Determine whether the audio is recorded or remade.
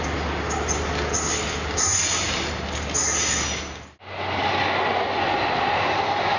recorded